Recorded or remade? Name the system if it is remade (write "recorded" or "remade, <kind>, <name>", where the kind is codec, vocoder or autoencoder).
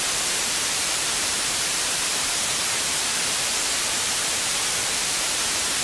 remade, vocoder, BigVGAN v2